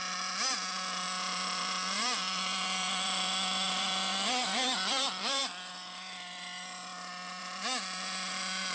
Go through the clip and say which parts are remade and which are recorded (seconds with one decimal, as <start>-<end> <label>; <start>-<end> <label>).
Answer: 0.0-5.4 remade; 5.4-7.4 recorded; 7.4-8.7 remade